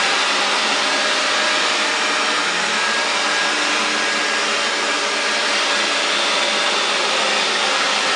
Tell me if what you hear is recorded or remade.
recorded